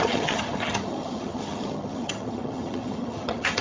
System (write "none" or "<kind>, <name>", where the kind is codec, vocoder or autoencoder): vocoder, HiFi-GAN